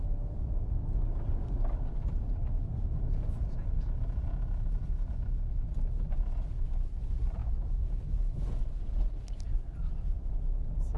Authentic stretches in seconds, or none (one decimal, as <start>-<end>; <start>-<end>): 0.0-2.7; 5.7-7.4; 8.6-11.0